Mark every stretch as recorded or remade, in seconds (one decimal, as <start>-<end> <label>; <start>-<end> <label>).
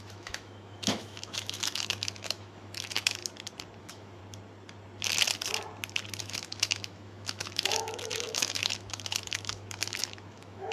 0.0-3.2 remade; 3.2-3.8 recorded; 3.8-4.2 remade; 4.2-6.2 recorded; 6.2-10.7 remade